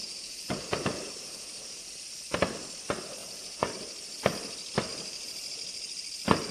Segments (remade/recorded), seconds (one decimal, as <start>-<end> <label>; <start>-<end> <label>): 0.0-1.9 remade; 1.9-3.2 recorded; 3.2-3.7 remade; 3.7-6.5 recorded